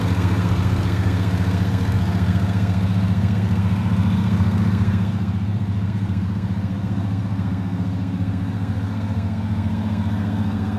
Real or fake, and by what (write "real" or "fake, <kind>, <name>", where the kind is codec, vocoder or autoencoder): fake, codec, SNAC